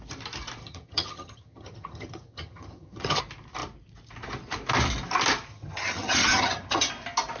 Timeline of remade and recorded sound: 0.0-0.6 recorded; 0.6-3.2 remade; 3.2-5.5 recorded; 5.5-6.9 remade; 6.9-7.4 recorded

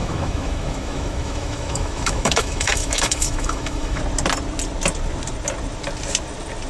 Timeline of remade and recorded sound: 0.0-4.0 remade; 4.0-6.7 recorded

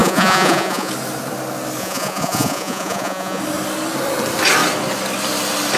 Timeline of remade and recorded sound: 0.0-0.9 remade; 0.9-1.8 recorded; 1.8-3.4 remade; 3.4-5.8 recorded

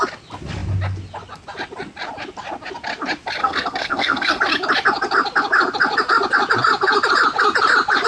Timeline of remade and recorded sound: 0.0-3.4 recorded; 3.4-4.4 remade; 4.4-8.1 recorded

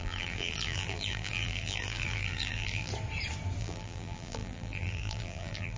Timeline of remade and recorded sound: 0.0-2.9 remade; 2.9-3.6 recorded; 3.6-5.8 remade

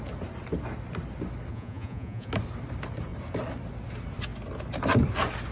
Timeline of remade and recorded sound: 0.0-1.5 recorded; 1.5-2.3 remade; 2.3-5.5 recorded

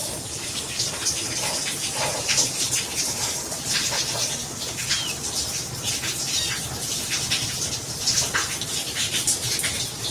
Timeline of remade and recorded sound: 0.0-0.9 remade; 0.9-10.1 recorded